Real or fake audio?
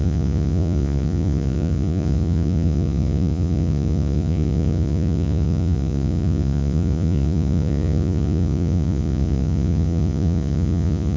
fake